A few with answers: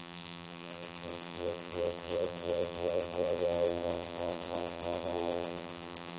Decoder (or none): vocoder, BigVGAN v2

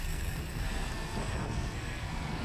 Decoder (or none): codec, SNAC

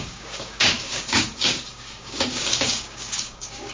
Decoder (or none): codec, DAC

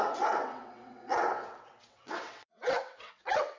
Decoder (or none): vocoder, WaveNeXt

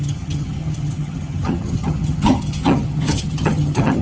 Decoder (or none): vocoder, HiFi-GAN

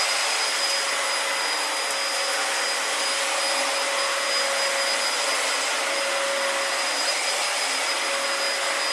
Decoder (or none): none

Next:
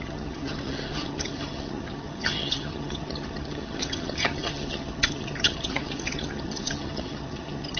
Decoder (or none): vocoder, HiFi-GAN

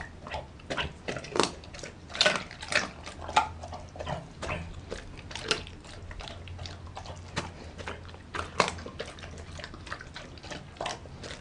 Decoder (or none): none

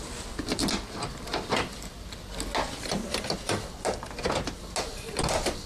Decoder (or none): none